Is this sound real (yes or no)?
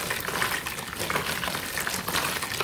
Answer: yes